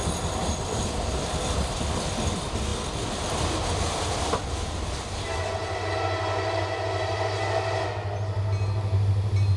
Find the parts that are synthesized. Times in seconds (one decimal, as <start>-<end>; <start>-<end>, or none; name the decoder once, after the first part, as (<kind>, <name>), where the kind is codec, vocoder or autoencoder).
none